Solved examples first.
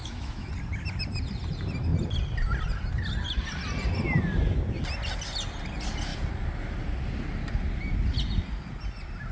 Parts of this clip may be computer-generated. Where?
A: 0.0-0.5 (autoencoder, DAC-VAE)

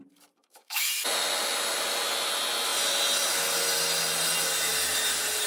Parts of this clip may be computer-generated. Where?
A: 0.4-1.0 (autoencoder, DAC-VAE)